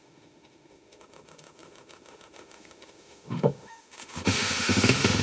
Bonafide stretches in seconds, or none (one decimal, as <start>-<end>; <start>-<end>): none